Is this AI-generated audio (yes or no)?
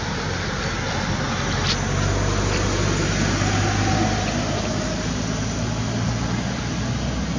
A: no